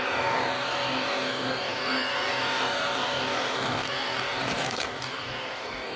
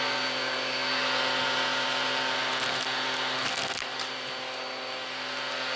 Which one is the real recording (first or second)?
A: second